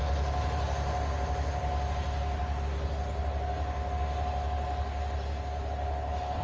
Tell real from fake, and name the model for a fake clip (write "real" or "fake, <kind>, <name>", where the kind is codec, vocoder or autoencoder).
real